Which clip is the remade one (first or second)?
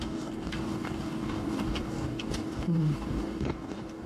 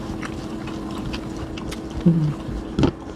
first